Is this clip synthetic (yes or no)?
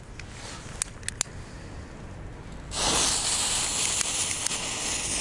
no